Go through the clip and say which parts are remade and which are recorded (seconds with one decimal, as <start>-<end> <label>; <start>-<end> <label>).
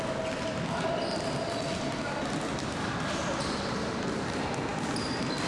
0.0-5.5 recorded